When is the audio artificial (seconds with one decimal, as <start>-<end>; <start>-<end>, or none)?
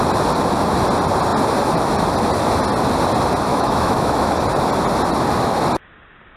3.5-4.4